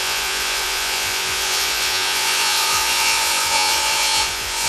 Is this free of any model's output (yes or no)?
no